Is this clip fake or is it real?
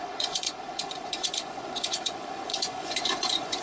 fake